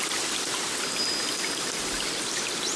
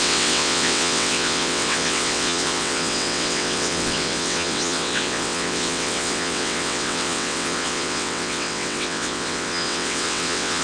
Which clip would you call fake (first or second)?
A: second